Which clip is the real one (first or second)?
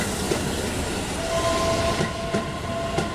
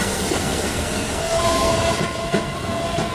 first